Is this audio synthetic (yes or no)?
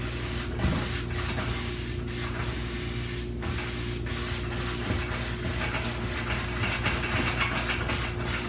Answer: no